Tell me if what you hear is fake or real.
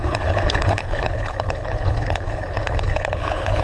fake